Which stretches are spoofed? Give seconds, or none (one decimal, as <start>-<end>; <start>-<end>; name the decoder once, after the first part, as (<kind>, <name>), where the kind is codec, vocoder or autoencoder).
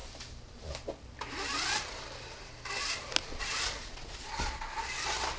3.2-4.6 (vocoder, Vocos)